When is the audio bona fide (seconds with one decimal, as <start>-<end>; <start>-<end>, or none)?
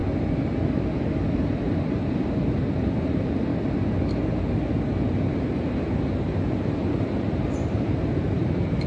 0.0-1.5; 3.5-5.1